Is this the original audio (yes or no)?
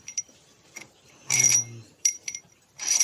no